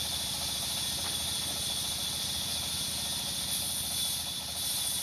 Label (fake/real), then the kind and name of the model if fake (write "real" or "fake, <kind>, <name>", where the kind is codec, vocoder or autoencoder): real